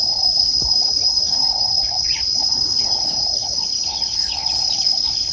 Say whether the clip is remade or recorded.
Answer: remade